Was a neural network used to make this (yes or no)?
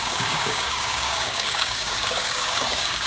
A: yes